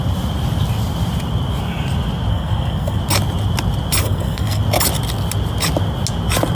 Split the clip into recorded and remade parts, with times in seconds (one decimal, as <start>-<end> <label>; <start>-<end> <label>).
0.0-2.3 recorded; 2.3-3.0 remade; 3.0-4.0 recorded; 4.0-4.6 remade; 4.6-6.5 recorded